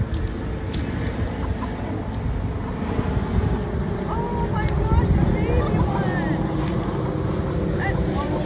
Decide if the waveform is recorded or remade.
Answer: recorded